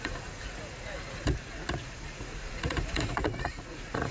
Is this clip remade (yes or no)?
yes